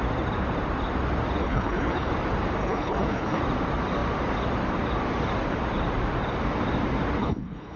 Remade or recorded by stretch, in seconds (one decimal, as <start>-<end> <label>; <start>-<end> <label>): 0.0-1.4 recorded; 1.4-2.1 remade; 2.1-2.6 recorded; 2.6-3.4 remade; 3.4-7.2 recorded; 7.2-7.8 remade